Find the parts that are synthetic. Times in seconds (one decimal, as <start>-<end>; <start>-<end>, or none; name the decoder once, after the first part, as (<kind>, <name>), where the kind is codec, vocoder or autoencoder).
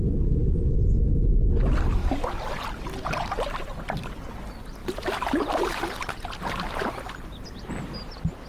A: none